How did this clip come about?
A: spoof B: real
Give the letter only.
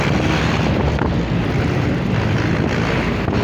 B